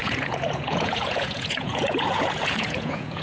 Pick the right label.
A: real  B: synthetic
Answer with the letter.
B